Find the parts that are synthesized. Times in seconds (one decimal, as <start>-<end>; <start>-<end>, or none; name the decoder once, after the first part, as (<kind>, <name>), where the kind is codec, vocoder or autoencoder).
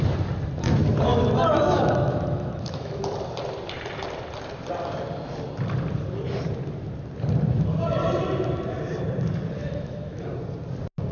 1.1-3.0 (autoencoder, DAC-VAE); 9.6-10.3